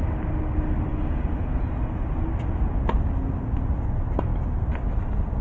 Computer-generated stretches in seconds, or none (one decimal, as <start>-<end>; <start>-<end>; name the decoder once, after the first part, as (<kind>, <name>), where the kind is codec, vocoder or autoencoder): none

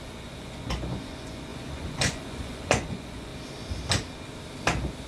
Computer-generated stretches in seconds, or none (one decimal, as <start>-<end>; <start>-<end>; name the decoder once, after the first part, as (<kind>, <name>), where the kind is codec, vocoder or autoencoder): 0.0-3.3 (vocoder, Vocos)